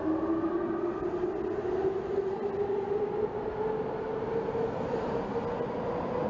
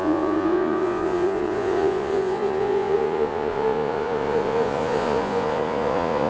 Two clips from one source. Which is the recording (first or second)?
first